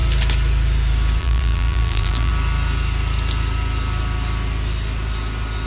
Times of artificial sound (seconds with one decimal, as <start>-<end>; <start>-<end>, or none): 1.2-2.3